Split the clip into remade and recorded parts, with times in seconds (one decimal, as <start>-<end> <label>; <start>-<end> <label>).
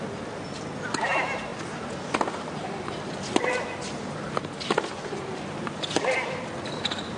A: 0.0-7.2 recorded